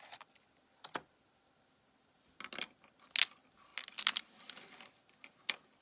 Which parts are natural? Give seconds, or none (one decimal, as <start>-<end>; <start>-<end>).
0.0-5.8